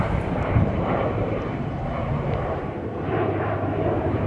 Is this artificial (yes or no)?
yes